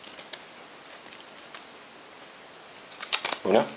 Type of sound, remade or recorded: recorded